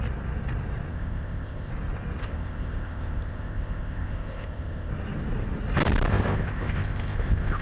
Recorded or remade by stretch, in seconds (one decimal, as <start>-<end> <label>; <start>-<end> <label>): 0.0-0.9 recorded; 0.9-1.7 remade; 1.7-2.2 recorded; 2.2-4.9 remade; 4.9-6.1 recorded; 6.1-7.6 remade